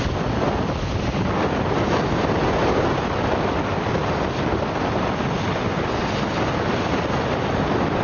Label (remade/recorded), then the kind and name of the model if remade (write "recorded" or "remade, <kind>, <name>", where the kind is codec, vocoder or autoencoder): recorded